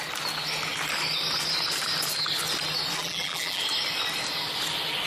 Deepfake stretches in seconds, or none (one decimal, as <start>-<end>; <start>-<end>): 3.0-3.6